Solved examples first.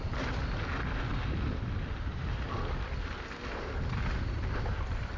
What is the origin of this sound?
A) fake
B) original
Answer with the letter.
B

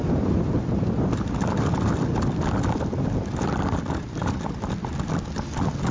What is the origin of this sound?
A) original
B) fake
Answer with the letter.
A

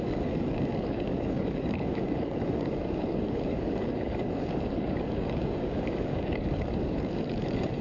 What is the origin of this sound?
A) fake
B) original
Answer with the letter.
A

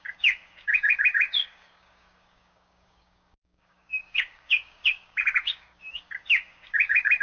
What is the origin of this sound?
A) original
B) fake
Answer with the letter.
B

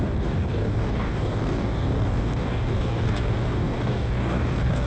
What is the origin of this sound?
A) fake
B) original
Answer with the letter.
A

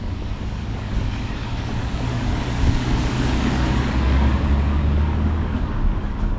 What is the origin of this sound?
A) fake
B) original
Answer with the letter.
A